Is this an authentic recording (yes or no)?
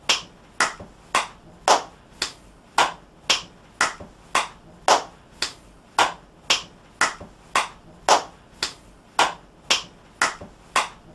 yes